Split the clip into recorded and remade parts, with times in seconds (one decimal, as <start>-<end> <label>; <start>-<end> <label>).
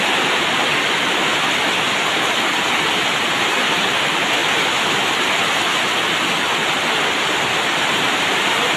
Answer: 0.0-0.7 remade; 0.7-3.3 recorded; 3.3-4.4 remade; 4.4-7.8 recorded; 7.8-8.8 remade